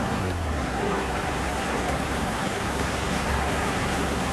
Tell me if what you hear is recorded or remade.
remade